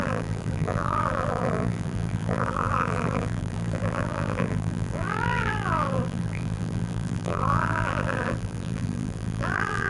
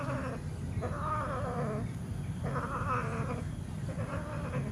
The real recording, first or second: second